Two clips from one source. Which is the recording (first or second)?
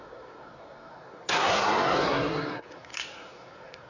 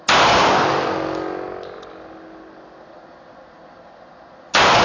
second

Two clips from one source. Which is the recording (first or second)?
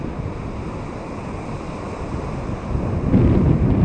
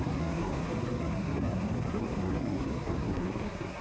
first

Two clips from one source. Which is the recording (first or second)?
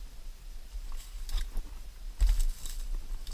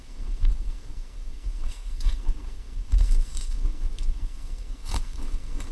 first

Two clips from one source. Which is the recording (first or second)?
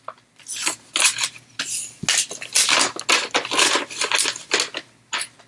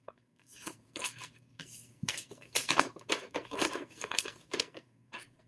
first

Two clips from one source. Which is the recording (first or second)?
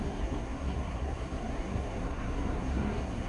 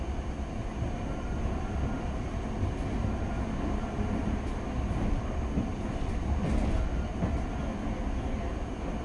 second